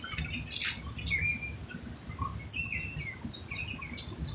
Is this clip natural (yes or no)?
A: yes